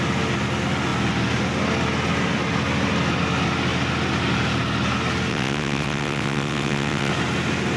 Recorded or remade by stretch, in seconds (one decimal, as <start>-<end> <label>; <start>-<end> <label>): 0.0-5.3 recorded; 5.3-7.1 remade; 7.1-7.8 recorded